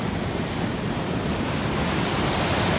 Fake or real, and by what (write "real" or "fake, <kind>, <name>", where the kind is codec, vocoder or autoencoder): real